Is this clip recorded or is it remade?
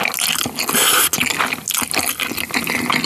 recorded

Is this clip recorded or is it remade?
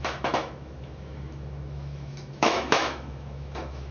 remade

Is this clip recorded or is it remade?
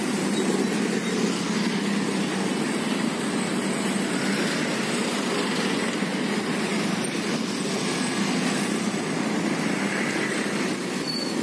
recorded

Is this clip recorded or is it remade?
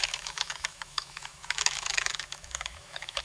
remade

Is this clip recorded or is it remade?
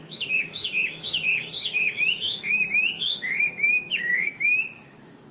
remade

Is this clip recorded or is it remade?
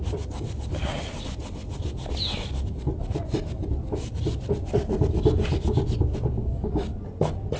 recorded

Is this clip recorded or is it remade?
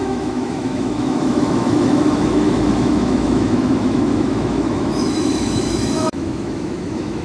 remade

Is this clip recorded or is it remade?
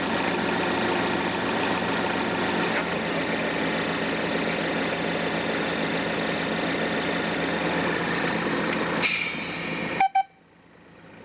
recorded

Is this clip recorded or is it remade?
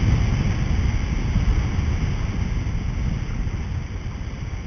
recorded